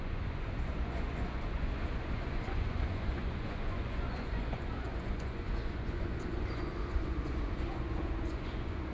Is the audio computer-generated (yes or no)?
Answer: yes